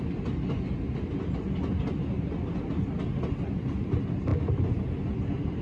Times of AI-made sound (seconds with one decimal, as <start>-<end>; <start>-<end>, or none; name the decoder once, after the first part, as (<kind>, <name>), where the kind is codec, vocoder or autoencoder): none